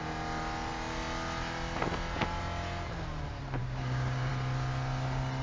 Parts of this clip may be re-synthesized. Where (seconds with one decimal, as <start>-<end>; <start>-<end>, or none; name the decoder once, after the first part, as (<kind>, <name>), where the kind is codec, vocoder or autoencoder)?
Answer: 3.6-4.3 (codec, DAC)